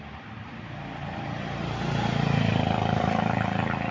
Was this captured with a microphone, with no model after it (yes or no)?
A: no